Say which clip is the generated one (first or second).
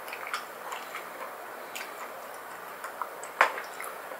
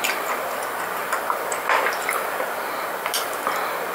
second